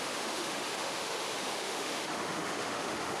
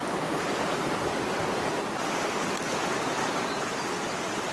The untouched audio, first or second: second